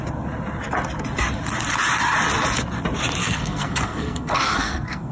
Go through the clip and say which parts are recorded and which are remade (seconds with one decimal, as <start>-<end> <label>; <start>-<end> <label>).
0.0-3.2 recorded; 3.2-5.1 remade